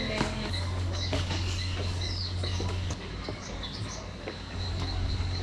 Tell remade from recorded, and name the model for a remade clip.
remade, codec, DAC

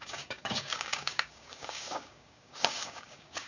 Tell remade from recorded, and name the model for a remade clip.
remade, codec, DAC